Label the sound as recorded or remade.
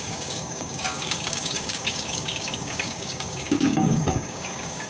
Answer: remade